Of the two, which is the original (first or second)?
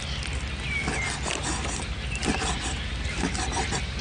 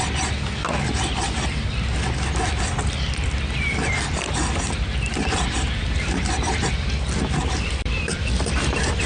first